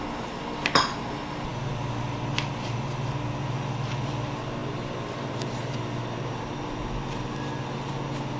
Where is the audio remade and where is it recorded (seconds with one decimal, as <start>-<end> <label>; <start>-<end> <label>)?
0.0-8.4 recorded